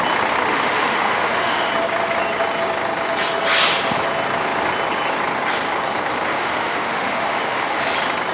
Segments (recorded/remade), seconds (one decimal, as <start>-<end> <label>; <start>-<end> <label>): 0.0-0.5 recorded; 0.5-1.7 remade; 1.7-6.3 recorded; 6.3-7.8 remade; 7.8-8.3 recorded

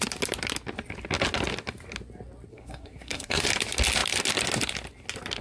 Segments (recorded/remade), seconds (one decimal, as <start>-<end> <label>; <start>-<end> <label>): 0.0-2.5 recorded; 2.5-3.4 remade; 3.4-5.4 recorded

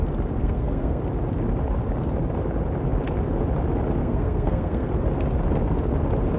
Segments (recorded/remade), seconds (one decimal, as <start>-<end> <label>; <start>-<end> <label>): 0.0-0.4 recorded; 0.4-1.0 remade; 1.0-4.0 recorded; 4.0-4.9 remade; 4.9-6.4 recorded

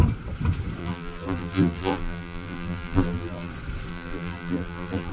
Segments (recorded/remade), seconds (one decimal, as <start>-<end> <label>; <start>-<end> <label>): 0.0-0.8 recorded; 0.8-3.5 remade; 3.5-3.9 recorded; 3.9-5.1 remade

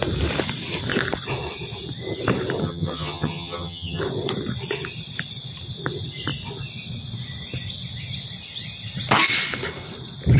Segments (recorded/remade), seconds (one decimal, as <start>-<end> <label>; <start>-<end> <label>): 0.0-2.6 recorded; 2.6-4.0 remade; 4.0-10.4 recorded

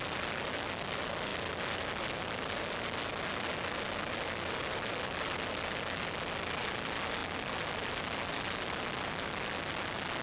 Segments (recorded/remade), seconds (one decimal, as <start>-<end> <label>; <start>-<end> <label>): 0.0-10.2 recorded

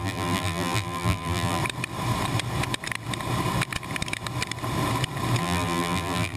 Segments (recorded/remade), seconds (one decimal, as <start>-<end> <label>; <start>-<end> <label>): 0.0-1.6 remade; 1.6-5.4 recorded; 5.4-6.4 remade

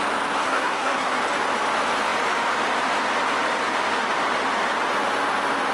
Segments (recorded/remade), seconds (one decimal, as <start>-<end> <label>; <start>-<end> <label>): 0.0-0.4 recorded; 0.4-1.2 remade; 1.2-5.7 recorded